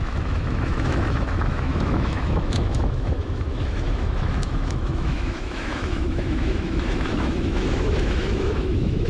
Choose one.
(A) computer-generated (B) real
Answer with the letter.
A